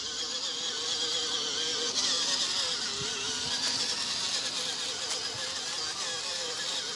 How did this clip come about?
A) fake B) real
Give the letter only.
B